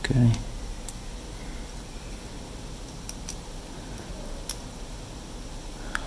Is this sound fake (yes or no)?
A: no